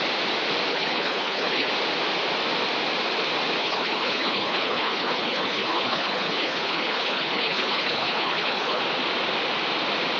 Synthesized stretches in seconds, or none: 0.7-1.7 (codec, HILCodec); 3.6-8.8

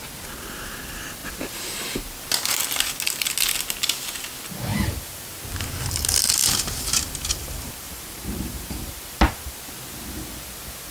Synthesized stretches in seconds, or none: 4.7-5.3 (vocoder, BigVGAN v2); 6.4-9.7

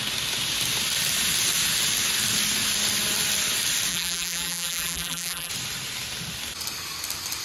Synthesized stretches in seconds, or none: 3.9-5.5 (vocoder, BigVGAN v2)